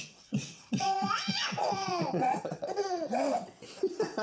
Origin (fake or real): fake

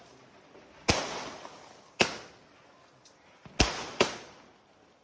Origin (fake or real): real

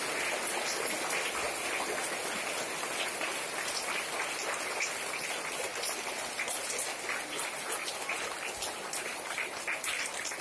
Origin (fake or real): real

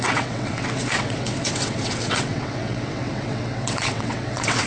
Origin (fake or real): fake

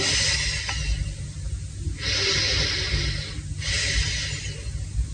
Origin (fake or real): real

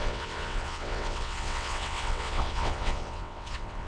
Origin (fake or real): fake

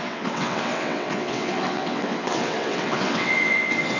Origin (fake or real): fake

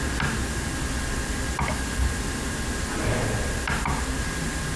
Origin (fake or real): real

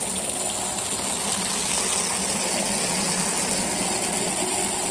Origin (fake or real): real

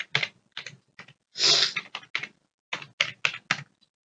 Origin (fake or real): real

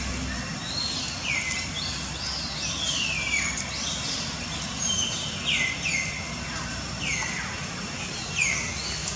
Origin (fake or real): real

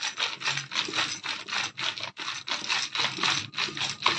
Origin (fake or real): real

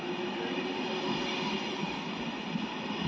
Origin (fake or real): real